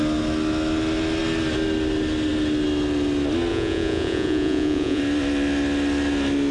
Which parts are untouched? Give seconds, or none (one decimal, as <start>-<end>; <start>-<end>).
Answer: 0.0-3.5; 5.0-6.5